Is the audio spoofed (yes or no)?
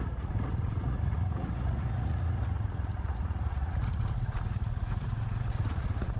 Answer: yes